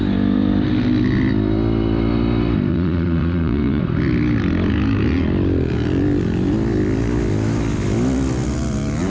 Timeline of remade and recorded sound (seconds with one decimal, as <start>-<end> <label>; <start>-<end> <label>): 0.0-2.7 recorded; 2.7-3.8 remade; 3.8-9.1 recorded